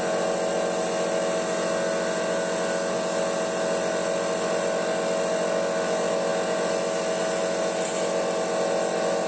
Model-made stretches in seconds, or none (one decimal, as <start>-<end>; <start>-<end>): none